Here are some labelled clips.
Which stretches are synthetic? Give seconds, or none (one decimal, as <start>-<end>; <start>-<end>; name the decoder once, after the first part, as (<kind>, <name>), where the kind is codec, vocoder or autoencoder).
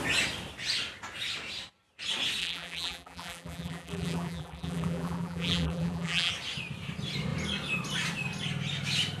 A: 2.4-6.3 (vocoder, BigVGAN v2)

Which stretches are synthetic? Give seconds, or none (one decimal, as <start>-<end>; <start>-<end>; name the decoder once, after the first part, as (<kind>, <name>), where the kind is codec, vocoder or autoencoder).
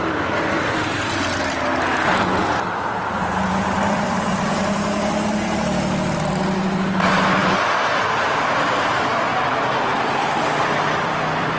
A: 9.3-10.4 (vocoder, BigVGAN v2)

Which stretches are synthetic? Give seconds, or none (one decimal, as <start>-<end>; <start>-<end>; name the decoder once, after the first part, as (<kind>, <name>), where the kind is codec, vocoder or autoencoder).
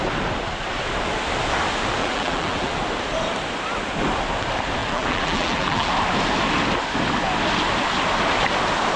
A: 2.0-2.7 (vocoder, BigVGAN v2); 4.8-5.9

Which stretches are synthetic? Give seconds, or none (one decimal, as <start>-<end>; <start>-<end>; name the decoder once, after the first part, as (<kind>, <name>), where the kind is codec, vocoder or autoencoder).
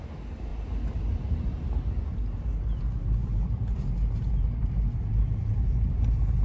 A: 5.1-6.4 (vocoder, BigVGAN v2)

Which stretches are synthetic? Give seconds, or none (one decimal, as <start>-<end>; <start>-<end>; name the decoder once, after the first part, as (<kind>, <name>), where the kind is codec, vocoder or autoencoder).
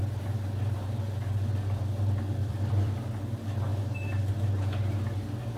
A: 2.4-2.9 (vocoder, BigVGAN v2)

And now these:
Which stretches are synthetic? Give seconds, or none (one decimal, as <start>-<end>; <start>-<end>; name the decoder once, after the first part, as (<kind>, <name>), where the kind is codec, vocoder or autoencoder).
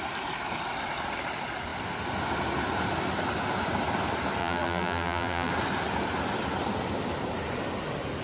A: 4.4-5.5 (vocoder, BigVGAN v2)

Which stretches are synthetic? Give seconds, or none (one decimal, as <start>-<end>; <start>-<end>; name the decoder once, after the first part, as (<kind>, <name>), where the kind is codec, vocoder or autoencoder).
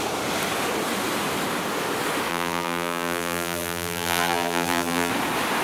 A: 2.3-5.1 (vocoder, BigVGAN v2)